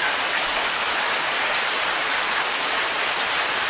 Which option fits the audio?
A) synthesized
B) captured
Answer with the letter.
B